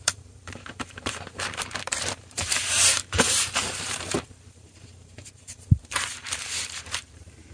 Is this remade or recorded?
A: remade